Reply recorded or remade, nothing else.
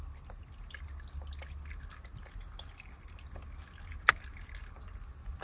recorded